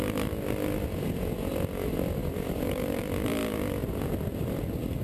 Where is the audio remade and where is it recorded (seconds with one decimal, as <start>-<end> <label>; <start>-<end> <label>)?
0.0-2.2 recorded; 2.2-3.0 remade; 3.0-5.0 recorded

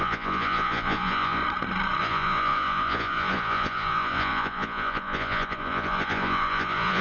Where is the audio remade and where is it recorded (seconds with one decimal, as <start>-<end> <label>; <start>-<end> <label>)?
0.0-1.4 remade; 1.4-2.0 recorded; 2.0-7.0 remade